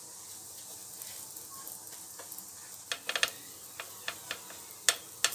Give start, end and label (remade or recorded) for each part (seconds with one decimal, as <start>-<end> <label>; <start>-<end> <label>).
0.0-5.3 recorded